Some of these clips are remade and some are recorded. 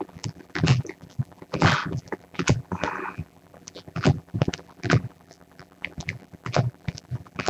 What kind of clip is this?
remade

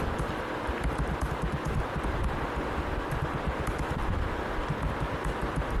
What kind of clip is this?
recorded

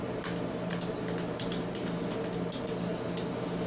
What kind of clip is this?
recorded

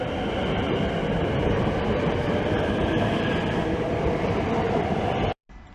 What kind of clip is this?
remade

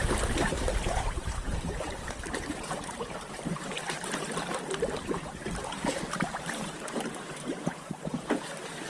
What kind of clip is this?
remade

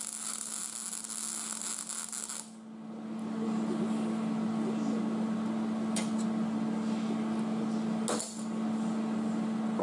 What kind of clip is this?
recorded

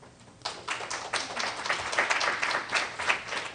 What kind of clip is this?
recorded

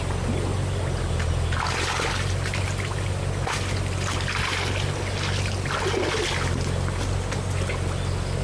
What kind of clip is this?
recorded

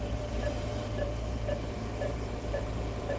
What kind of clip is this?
remade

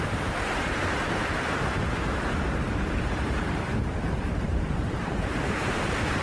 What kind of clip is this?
remade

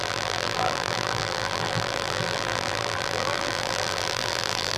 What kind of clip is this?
remade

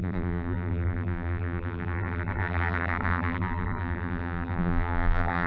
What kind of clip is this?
remade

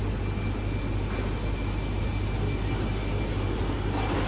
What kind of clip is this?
recorded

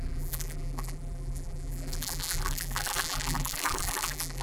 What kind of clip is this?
remade